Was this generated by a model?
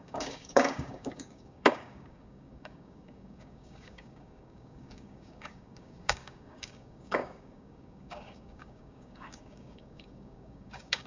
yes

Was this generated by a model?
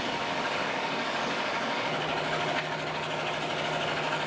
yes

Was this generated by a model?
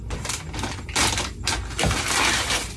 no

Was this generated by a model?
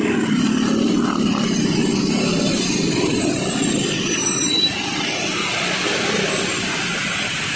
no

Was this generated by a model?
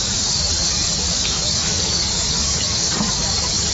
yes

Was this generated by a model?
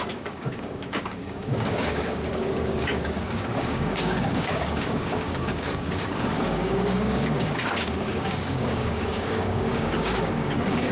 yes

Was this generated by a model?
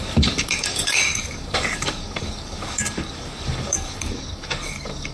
yes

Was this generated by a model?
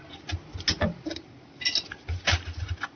no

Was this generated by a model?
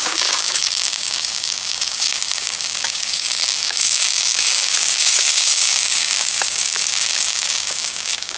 yes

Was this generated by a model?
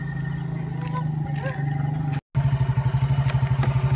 no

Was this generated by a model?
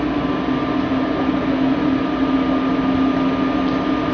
no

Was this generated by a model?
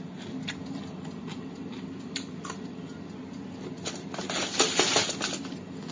no